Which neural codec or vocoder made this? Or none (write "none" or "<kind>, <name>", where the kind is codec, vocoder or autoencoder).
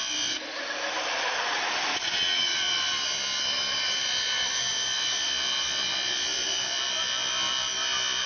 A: none